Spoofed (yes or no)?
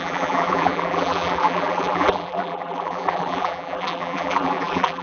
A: yes